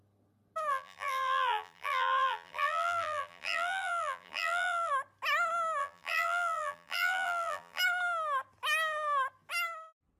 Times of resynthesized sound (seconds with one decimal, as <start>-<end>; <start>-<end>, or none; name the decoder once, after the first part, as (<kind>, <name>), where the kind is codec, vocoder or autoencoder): 0.7-4.9 (vocoder, BigVGAN v2); 5.8-7.8